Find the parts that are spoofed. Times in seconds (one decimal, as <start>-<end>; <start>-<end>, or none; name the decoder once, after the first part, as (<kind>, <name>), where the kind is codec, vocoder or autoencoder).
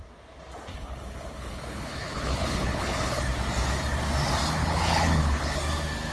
0.7-3.2 (codec, HILCodec); 4.6-5.6